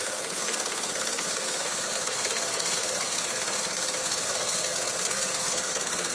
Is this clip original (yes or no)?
no